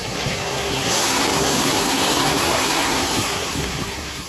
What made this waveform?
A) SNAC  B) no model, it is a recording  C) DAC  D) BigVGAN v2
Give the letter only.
A